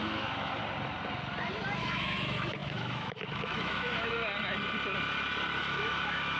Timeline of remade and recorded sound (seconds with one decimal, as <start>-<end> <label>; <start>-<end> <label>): 0.0-0.6 remade; 0.6-1.8 recorded; 1.8-4.2 remade; 4.2-5.6 recorded; 5.6-6.4 remade